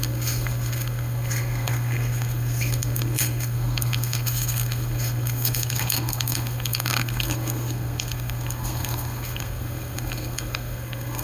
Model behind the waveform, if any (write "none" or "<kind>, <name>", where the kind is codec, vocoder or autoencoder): codec, SNAC